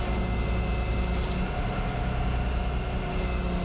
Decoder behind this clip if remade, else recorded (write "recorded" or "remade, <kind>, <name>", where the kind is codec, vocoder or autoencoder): recorded